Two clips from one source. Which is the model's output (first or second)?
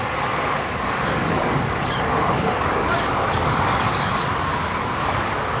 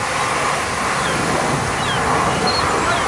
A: first